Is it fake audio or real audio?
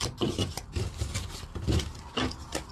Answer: real